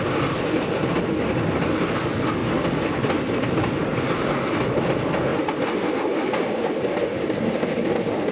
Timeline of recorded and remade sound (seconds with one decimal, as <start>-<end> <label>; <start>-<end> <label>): 0.0-8.3 recorded